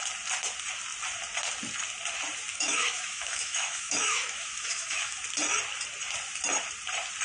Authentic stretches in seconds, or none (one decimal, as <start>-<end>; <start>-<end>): 0.0-2.5; 5.2-7.2